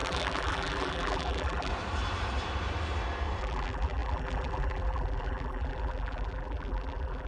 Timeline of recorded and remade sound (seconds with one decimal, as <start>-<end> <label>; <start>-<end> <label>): 0.0-1.7 remade; 1.7-3.4 recorded; 3.4-7.3 remade